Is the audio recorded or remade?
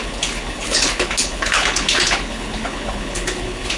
remade